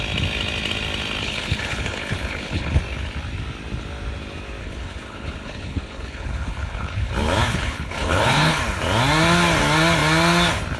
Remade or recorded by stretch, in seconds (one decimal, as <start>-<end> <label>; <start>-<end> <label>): 0.0-1.2 recorded; 1.2-2.8 remade; 2.8-4.6 recorded; 4.6-7.1 remade; 7.1-7.5 recorded; 7.5-8.6 remade; 8.6-10.8 recorded